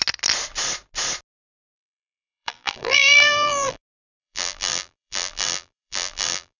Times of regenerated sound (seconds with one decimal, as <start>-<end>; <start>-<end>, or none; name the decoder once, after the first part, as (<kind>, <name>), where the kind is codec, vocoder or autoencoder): 1.6-3.8 (vocoder, BigVGAN v2); 4.2-6.6